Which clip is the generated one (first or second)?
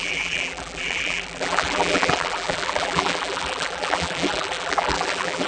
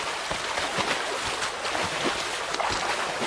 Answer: first